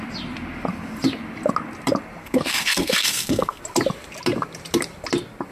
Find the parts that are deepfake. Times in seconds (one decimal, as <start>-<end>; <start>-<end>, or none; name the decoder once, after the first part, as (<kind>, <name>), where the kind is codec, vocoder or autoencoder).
2.2-3.6 (codec, SNAC)

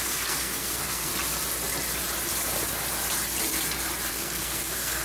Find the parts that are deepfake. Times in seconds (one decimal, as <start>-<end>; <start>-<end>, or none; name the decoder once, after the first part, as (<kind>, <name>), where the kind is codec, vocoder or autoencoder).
0.0-1.1 (codec, SNAC); 4.1-5.0

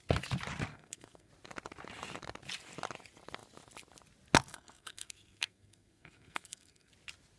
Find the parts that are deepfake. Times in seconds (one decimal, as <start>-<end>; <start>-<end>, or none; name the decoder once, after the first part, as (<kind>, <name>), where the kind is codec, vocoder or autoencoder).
0.7-1.3 (codec, SNAC); 4.5-6.9

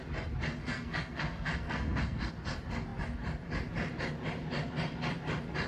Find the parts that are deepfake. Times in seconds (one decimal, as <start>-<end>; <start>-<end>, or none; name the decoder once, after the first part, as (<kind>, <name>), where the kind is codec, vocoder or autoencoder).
0.6-2.3 (codec, SNAC)

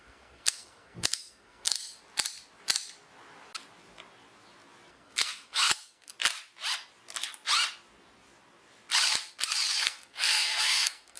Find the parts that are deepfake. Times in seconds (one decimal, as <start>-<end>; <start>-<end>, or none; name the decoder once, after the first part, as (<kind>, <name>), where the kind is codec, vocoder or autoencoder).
0.0-1.8 (codec, SNAC); 4.9-6.1; 9.8-11.2

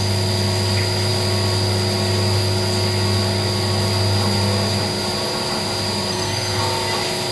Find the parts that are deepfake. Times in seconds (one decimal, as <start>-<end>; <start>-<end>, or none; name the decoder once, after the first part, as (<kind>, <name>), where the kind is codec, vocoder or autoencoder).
6.1-6.6 (codec, SNAC)

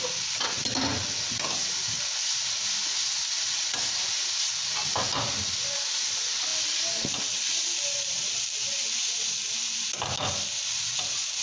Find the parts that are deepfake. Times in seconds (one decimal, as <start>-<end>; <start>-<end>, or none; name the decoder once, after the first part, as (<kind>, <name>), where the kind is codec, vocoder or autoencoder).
none